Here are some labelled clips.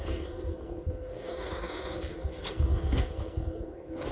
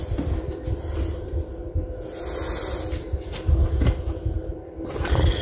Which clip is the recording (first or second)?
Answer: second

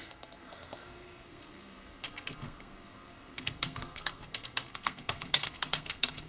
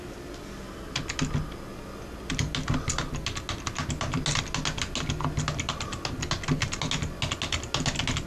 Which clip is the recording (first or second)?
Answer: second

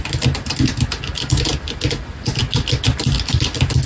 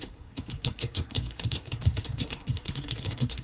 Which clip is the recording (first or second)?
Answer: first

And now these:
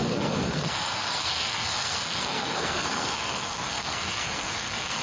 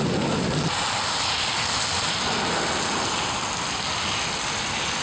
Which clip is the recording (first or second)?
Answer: second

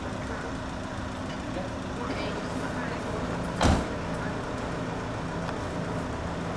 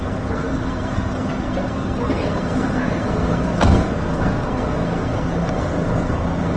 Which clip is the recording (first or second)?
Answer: first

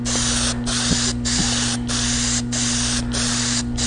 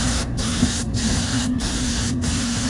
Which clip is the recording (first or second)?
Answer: first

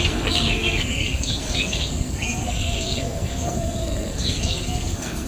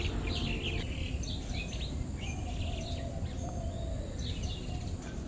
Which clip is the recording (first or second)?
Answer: second